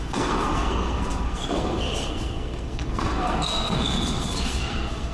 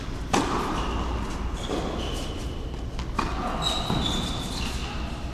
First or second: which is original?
second